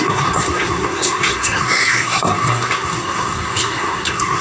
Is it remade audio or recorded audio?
remade